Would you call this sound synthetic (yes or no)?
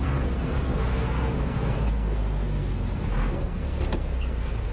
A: yes